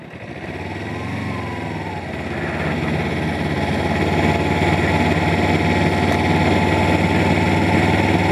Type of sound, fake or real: real